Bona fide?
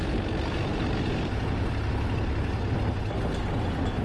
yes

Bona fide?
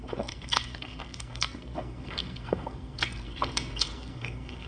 no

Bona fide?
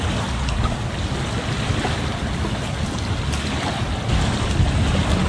yes